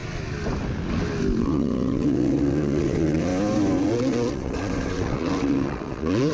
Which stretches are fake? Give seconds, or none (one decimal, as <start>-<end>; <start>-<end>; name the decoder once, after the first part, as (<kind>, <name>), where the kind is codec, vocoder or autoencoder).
1.4-3.3 (vocoder, WaveNeXt); 3.8-6.3